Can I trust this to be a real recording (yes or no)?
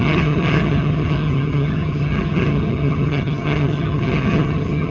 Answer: no